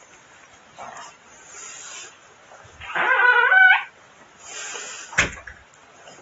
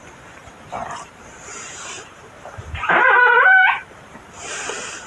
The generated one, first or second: second